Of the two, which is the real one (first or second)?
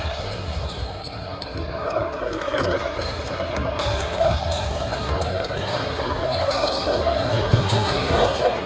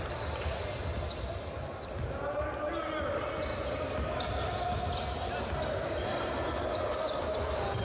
second